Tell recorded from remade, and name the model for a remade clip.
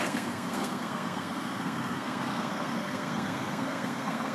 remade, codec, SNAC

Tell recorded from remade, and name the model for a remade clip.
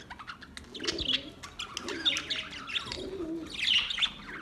recorded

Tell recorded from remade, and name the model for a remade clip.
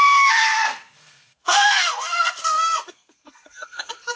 remade, codec, SNAC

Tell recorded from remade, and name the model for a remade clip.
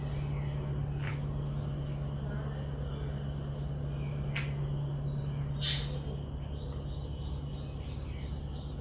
recorded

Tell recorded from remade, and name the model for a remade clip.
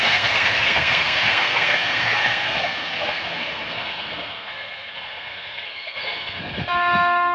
remade, codec, SNAC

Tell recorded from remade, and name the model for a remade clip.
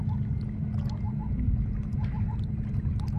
recorded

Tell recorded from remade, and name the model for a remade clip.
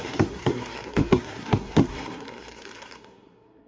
remade, codec, SNAC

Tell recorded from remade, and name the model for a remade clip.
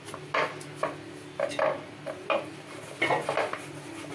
recorded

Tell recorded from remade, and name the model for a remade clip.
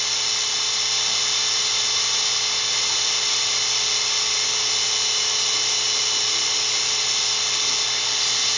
recorded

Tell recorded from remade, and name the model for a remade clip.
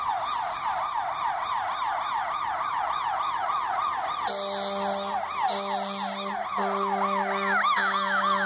recorded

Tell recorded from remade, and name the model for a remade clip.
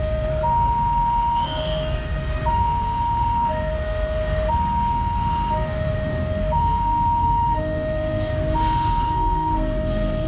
remade, codec, SNAC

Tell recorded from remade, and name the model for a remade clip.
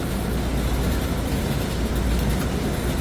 recorded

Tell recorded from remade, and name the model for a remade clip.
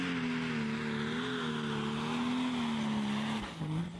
recorded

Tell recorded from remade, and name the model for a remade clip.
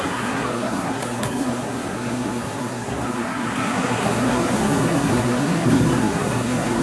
remade, codec, SNAC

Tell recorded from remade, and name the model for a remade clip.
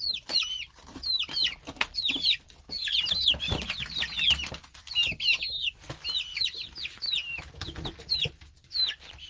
recorded